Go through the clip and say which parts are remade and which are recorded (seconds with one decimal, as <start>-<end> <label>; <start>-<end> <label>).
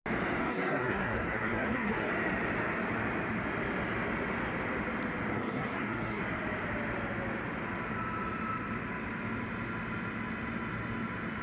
0.0-0.4 recorded; 0.4-2.1 remade; 2.1-5.3 recorded; 5.3-6.2 remade; 6.2-11.4 recorded